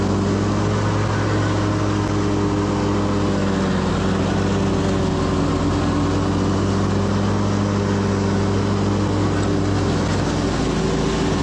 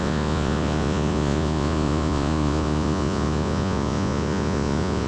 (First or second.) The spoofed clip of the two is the second